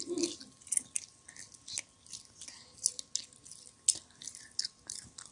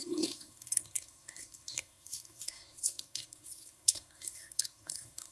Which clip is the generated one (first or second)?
second